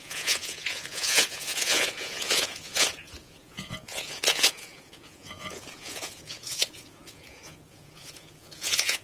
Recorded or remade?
remade